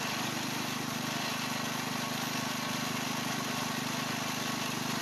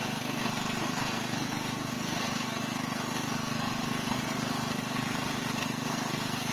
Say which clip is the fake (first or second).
second